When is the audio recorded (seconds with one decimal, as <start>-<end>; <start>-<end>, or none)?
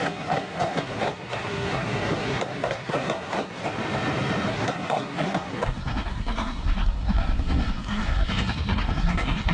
3.6-4.5